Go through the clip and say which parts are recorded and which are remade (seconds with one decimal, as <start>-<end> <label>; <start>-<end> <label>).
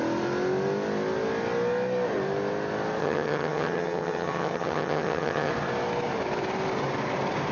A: 0.0-3.0 recorded; 3.0-5.5 remade; 5.5-7.5 recorded